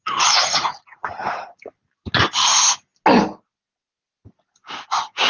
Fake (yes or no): no